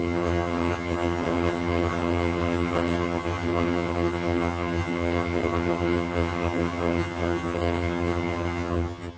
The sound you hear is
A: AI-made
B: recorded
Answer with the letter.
A